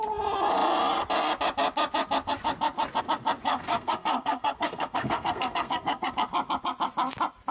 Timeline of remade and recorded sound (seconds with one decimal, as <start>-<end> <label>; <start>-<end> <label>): 0.0-3.5 recorded; 3.5-6.1 remade; 6.1-7.5 recorded